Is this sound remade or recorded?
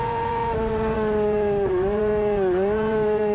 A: remade